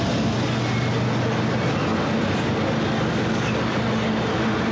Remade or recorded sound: recorded